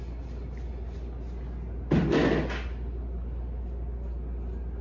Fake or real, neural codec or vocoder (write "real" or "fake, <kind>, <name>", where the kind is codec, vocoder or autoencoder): real